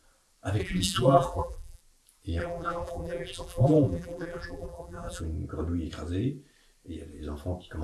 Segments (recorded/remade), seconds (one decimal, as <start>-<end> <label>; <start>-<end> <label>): 0.0-0.6 recorded; 0.6-1.8 remade; 1.8-2.4 recorded; 2.4-5.2 remade; 5.2-7.8 recorded